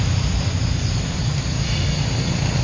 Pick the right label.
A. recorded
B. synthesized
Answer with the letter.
A